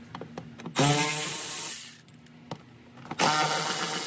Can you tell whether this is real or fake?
real